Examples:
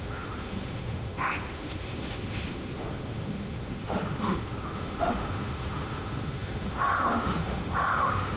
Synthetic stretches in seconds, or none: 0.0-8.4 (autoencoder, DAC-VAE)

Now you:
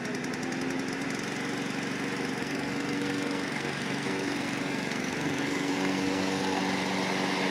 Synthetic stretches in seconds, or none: 2.4-6.6 (codec, SNAC)